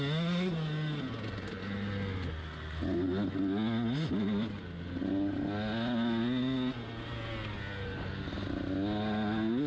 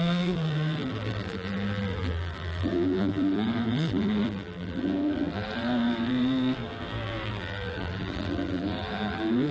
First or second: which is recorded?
first